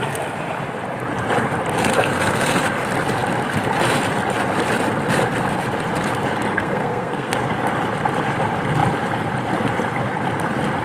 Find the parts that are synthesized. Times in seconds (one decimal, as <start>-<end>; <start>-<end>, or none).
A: 1.9-2.6; 6.5-7.3